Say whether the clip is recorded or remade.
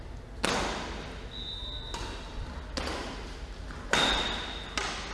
recorded